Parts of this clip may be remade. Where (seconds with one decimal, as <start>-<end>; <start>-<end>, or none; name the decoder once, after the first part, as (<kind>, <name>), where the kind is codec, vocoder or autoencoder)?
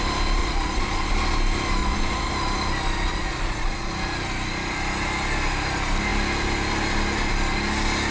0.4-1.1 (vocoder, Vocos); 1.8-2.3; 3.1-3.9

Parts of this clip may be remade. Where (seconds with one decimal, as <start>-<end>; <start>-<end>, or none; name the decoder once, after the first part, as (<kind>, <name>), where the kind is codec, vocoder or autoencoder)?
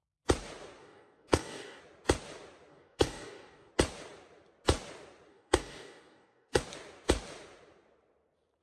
0.8-1.8 (codec, DAC); 2.7-3.7; 5.3-6.6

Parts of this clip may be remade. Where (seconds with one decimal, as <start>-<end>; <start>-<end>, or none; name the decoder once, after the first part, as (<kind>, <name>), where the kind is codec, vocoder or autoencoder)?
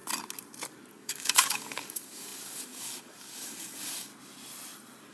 0.9-4.1 (codec, DAC)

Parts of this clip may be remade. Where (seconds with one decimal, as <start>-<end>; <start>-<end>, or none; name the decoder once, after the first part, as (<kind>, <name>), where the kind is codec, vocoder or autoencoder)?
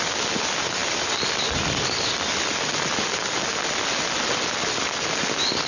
none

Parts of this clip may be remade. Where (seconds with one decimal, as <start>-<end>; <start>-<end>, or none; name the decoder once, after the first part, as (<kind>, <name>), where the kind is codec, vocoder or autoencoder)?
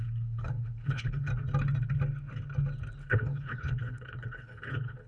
0.0-1.3 (codec, HILCodec); 3.0-5.1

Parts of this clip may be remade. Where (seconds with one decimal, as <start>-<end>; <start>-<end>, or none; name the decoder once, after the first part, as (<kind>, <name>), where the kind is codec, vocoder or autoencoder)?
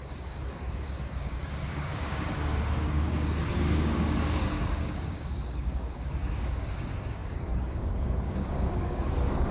0.0-9.5 (codec, DAC)